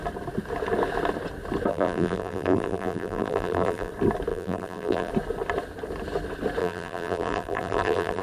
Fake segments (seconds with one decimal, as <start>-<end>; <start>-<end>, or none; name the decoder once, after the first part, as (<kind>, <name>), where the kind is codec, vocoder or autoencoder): 1.7-3.9 (vocoder, BigVGAN v2); 4.3-5.1; 6.6-8.2